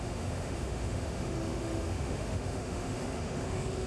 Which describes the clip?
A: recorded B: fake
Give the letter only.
B